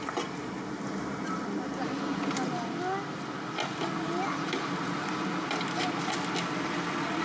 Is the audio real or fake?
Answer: real